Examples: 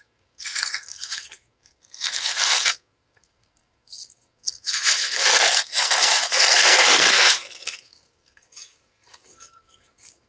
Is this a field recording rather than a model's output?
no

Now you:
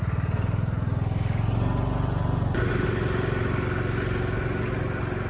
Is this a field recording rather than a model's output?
yes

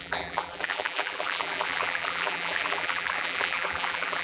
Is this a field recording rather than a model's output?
no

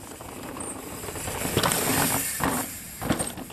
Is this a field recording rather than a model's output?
yes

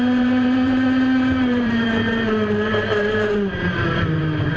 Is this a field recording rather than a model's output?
no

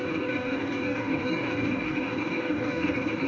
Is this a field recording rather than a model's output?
no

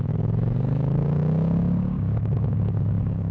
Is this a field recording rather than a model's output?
no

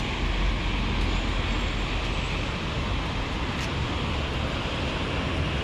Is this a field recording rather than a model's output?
yes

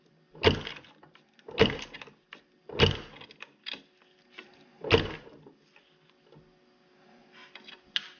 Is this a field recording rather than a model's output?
yes